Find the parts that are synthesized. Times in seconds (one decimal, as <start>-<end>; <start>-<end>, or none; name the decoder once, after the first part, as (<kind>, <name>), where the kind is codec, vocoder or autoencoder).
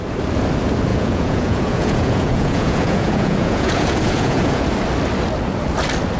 0.9-4.6 (vocoder, Vocos)